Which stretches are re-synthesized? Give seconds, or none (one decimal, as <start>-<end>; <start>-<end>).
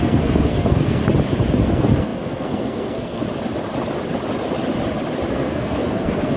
0.0-1.0; 1.6-3.2; 5.3-6.4